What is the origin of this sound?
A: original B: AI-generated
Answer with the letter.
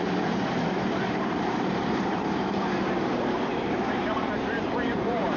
B